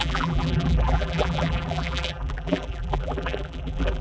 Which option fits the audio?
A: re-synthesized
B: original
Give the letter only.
A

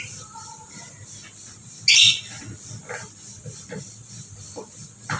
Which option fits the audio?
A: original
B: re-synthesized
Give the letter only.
A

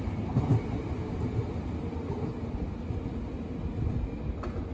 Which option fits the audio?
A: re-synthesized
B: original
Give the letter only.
B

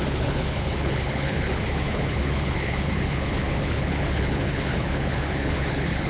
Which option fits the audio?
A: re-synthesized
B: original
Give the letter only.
A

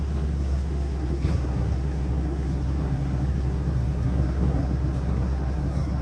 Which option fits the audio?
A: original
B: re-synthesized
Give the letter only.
B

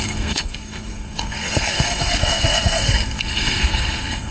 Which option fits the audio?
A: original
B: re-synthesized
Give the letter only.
B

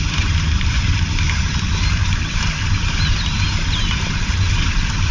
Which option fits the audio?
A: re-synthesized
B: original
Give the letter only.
B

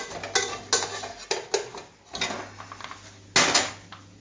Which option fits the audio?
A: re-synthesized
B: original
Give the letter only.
B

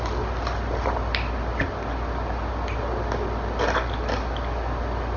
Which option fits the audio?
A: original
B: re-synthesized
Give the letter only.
A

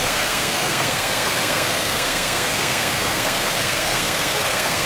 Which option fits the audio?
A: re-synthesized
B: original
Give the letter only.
A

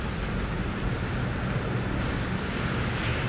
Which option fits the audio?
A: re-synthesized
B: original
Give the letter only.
B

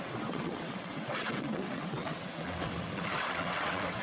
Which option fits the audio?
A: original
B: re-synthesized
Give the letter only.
B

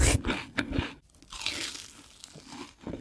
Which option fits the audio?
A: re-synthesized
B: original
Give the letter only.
B